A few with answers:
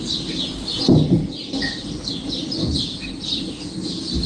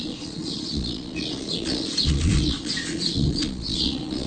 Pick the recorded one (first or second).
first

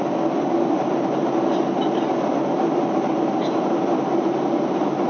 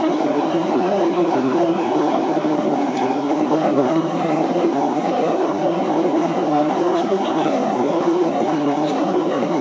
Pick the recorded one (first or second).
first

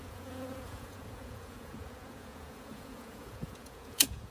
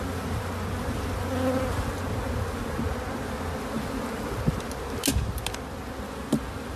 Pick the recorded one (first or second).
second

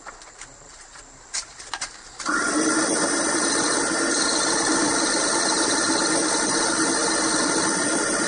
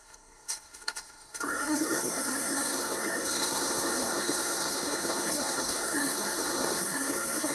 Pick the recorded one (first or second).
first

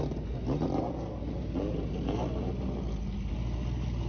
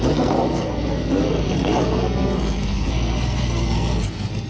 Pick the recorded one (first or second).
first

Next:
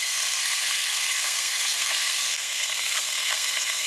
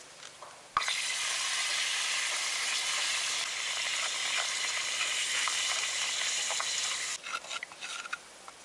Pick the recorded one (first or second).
second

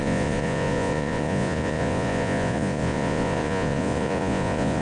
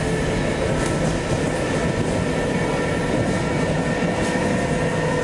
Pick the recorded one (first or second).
second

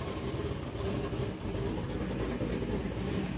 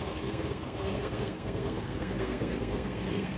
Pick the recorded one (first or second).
first